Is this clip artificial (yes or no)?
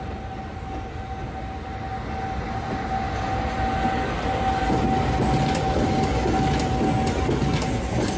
no